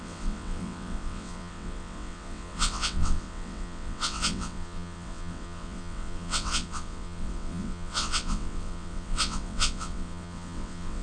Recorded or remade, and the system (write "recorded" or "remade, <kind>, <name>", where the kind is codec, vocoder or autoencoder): remade, vocoder, WaveNeXt